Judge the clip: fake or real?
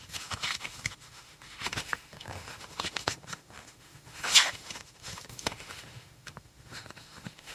fake